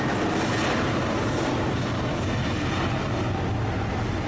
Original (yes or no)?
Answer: yes